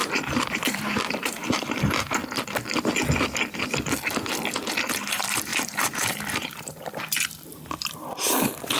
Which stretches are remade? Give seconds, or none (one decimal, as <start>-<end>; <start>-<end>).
0.5-2.2; 4.9-8.8